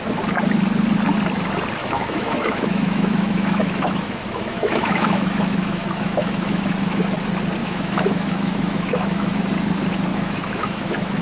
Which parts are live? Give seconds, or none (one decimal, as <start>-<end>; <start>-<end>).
0.0-1.8; 7.0-7.6; 9.4-10.1